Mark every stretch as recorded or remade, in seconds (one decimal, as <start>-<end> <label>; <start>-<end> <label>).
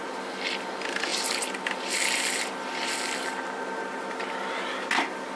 0.0-5.4 recorded